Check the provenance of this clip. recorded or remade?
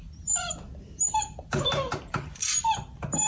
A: recorded